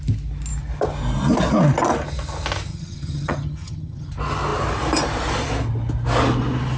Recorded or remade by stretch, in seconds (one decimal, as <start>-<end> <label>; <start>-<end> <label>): 0.0-2.7 recorded; 2.7-4.1 remade; 4.1-6.8 recorded